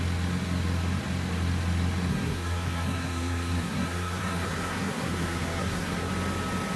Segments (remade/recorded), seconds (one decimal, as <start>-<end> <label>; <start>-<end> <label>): 0.0-2.1 recorded; 2.1-6.1 remade; 6.1-6.8 recorded